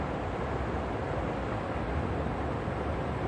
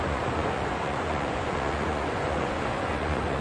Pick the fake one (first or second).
second